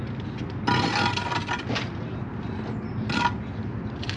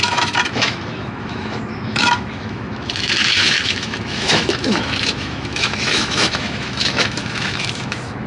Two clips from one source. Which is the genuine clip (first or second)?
first